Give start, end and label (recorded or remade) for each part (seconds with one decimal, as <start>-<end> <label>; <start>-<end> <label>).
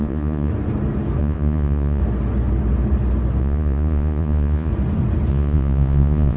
0.0-0.5 remade; 0.5-1.2 recorded; 1.2-2.0 remade; 2.0-3.4 recorded; 3.4-4.7 remade; 4.7-5.3 recorded; 5.3-6.4 remade